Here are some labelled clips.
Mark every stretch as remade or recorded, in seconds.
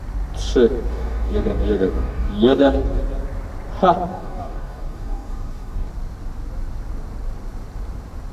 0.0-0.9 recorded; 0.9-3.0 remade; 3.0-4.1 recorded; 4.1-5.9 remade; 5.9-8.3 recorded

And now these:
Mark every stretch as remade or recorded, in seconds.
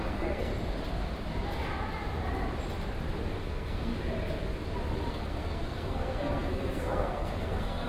0.0-0.5 remade; 0.5-3.4 recorded; 3.4-3.9 remade; 3.9-5.1 recorded; 5.1-7.9 remade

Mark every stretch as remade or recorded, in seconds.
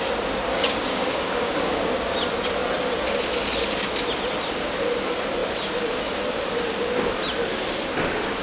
0.0-0.5 recorded; 0.5-1.8 remade; 1.8-8.4 recorded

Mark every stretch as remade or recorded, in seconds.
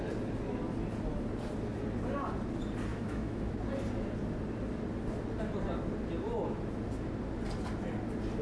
0.0-2.9 recorded; 2.9-3.5 remade; 3.5-8.4 recorded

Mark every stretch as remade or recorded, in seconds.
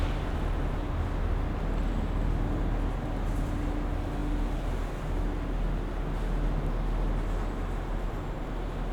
0.0-8.9 recorded